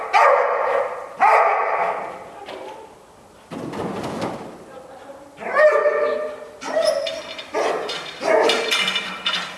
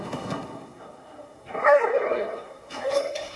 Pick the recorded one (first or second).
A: first